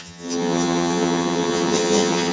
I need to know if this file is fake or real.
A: fake